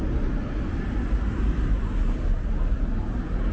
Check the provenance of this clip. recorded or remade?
recorded